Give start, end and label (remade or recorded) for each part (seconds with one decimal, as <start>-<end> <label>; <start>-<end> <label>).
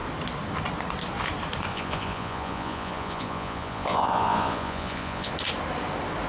0.0-1.7 recorded; 1.7-5.3 remade; 5.3-6.3 recorded